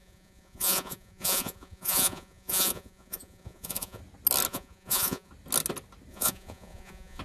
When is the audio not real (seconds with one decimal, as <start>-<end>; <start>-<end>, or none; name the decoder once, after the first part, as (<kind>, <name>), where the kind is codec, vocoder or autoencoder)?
0.0-4.0 (vocoder, Vocos); 4.5-5.3; 6.1-7.2